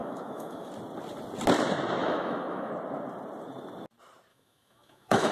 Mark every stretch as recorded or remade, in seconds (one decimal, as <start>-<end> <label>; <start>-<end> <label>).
0.0-0.7 remade; 0.7-2.0 recorded; 2.0-2.7 remade; 2.7-4.3 recorded; 4.3-5.3 remade